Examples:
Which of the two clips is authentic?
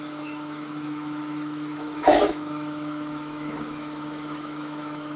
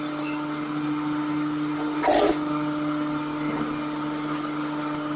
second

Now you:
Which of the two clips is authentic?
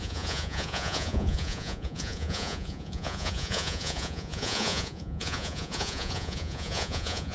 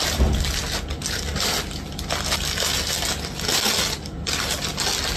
second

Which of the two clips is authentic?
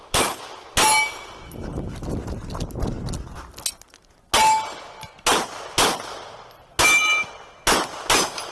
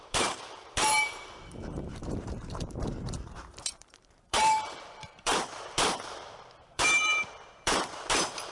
first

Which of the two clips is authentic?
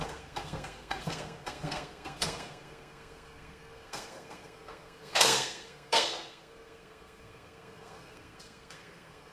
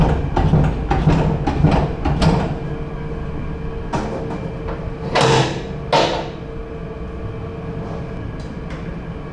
second